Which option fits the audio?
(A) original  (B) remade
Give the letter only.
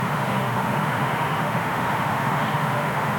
B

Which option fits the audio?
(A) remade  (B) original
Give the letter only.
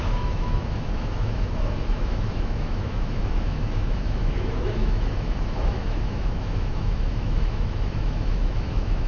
A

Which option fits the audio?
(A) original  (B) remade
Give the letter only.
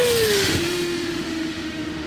B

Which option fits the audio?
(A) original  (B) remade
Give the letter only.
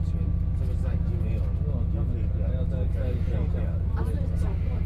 A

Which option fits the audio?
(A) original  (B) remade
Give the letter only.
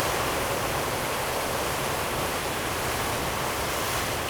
A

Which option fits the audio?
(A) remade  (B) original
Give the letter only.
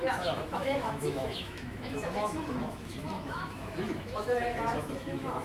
A